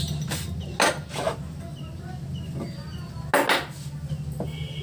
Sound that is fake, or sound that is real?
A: real